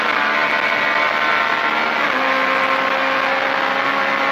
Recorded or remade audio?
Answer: recorded